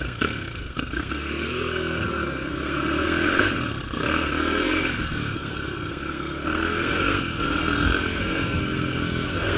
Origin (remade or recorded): remade